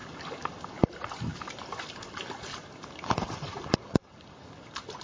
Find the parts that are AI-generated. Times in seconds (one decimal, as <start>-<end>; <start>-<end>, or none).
none